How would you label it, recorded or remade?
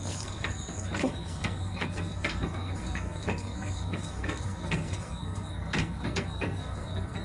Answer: remade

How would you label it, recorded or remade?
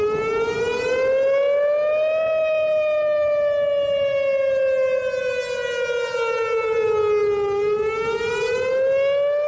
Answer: recorded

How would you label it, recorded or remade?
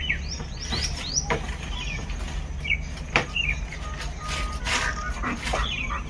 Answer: recorded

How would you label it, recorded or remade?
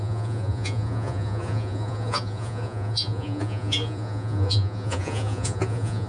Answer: remade